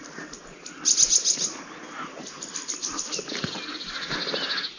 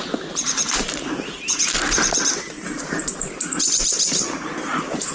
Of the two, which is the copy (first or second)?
second